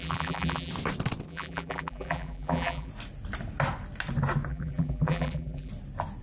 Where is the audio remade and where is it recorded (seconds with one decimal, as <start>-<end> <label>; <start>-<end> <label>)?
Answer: 0.0-0.7 remade; 0.7-1.3 recorded; 1.3-2.9 remade; 2.9-4.5 recorded; 4.5-5.7 remade; 5.7-6.2 recorded